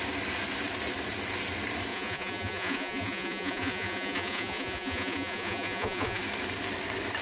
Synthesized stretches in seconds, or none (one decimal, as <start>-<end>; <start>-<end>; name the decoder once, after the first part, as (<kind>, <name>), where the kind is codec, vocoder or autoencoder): 1.9-6.2 (vocoder, Vocos)